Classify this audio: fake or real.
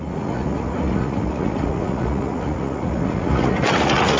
fake